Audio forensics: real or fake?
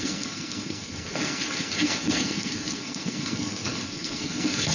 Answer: fake